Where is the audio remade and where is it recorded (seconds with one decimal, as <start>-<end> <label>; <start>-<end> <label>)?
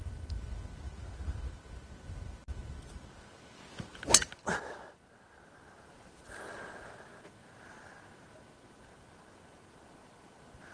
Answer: 0.0-10.7 recorded